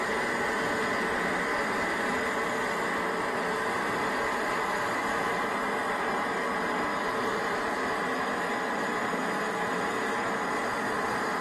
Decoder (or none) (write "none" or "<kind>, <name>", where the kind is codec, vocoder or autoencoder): none